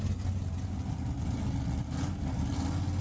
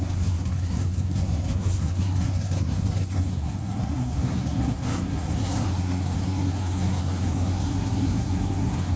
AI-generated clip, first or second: second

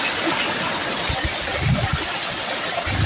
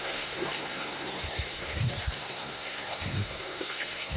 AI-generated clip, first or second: second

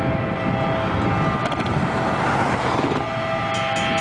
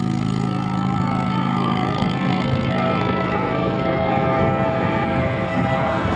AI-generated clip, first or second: second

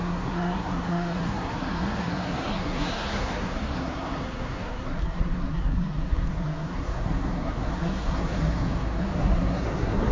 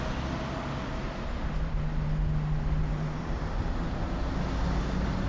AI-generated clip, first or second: first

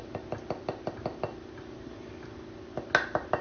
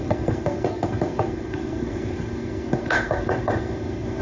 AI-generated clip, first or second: second